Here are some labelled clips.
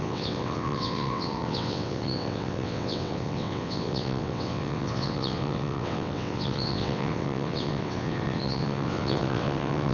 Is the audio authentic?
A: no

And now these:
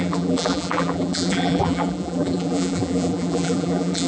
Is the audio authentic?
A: no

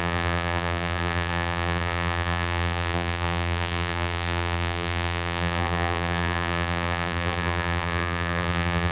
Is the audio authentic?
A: no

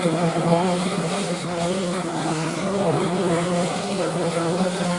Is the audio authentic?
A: no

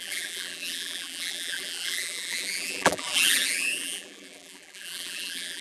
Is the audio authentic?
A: no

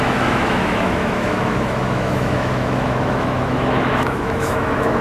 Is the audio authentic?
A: no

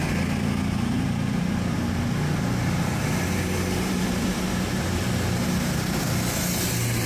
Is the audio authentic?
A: yes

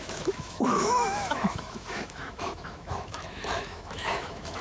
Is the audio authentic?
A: no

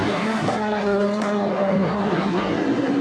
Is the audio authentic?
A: no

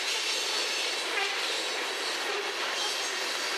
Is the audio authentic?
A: yes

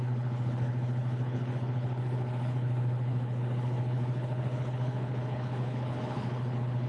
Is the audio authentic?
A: no